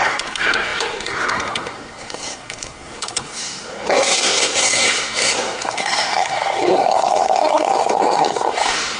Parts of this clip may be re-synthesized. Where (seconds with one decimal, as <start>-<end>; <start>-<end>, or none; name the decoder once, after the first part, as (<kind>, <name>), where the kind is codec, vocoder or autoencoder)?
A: 0.0-9.0 (codec, SNAC)